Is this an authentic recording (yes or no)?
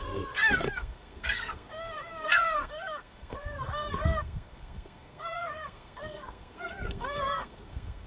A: no